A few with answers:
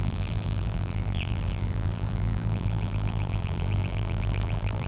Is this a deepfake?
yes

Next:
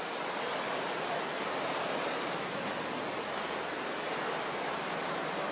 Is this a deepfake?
no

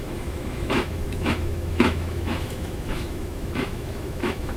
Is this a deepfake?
yes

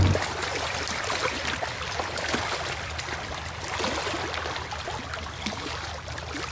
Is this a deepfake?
no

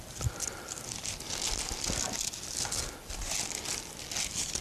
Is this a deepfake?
no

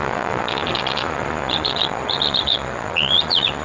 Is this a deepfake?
yes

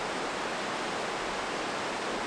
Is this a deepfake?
no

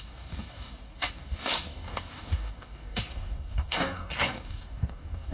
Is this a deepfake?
yes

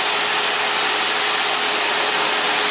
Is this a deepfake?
no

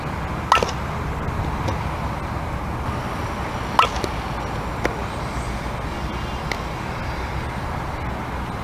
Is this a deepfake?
no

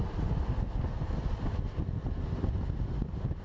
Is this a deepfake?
no